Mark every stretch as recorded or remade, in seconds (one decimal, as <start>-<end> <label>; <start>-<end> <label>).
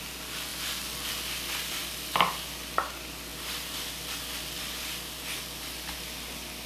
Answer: 0.0-6.7 recorded